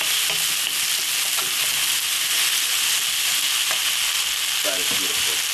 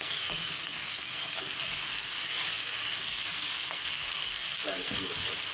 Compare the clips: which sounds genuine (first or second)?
first